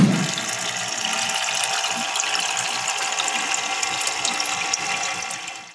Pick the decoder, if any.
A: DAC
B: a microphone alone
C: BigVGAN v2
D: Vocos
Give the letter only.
B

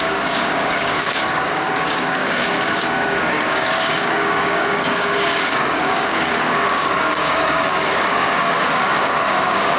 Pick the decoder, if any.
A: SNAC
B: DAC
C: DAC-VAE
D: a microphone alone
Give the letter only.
B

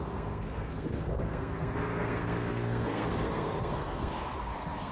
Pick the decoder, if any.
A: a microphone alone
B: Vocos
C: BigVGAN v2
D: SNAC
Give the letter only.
D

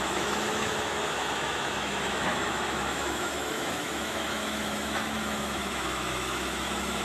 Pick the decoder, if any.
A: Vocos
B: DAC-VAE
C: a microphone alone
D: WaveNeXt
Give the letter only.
B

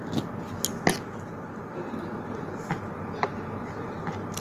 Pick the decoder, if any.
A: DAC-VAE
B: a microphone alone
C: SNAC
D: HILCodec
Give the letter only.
B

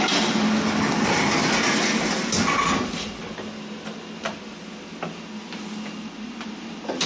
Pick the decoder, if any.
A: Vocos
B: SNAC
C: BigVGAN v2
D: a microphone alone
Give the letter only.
D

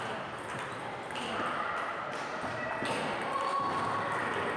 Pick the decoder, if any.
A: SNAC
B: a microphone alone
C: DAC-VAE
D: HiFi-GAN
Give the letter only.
B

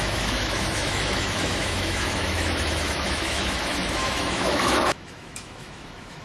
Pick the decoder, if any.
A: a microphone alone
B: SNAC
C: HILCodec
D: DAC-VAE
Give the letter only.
D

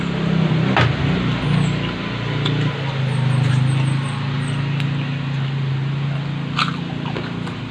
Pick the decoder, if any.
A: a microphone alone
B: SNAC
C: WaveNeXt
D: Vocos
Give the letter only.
A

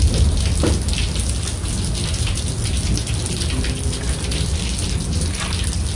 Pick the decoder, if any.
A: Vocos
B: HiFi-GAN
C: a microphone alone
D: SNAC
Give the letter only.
C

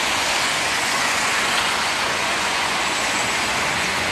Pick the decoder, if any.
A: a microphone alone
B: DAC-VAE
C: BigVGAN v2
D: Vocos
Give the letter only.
D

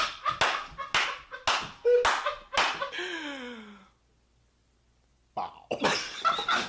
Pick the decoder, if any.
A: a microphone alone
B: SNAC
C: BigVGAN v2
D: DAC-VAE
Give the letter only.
A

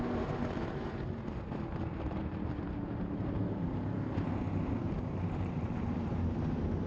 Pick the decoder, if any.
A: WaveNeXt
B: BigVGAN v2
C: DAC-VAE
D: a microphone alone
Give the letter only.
B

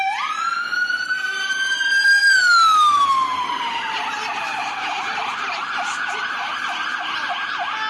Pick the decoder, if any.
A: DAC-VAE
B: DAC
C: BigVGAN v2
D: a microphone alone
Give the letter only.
D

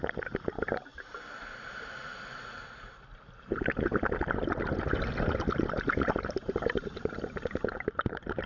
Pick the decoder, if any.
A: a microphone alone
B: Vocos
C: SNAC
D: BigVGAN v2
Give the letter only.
A